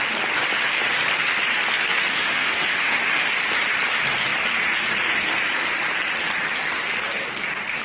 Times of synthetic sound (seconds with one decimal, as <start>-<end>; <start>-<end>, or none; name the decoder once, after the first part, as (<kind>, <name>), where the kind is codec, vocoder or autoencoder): 2.1-3.3 (autoencoder, DAC-VAE)